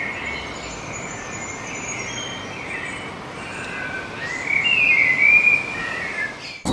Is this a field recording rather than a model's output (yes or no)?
yes